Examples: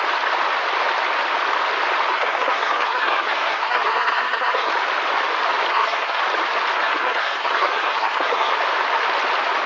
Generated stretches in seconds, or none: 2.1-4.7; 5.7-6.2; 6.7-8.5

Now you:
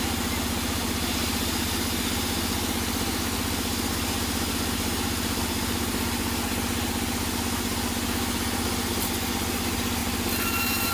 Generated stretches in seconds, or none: none

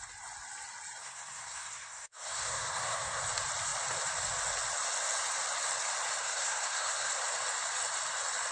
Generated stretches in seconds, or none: 1.0-3.2; 6.2-7.1

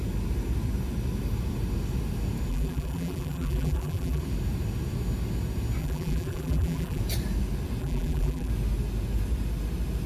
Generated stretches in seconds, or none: 2.5-4.2; 5.8-7.0; 7.8-8.5

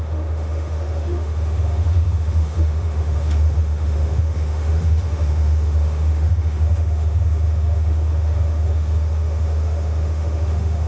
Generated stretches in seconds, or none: 0.0-10.9